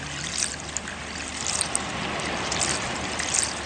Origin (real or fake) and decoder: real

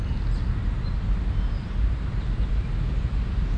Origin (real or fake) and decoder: real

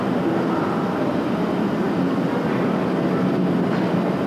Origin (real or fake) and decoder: real